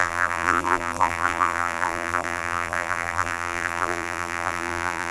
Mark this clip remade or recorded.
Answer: remade